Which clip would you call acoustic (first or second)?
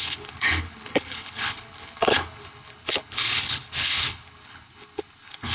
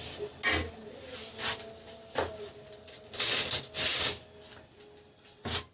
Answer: second